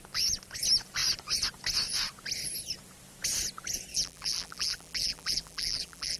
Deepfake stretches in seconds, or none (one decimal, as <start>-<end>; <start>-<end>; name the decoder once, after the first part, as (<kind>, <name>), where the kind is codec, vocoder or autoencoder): 3.9-6.2 (vocoder, BigVGAN v2)